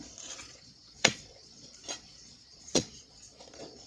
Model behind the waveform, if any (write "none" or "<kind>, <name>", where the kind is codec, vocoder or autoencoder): vocoder, Vocos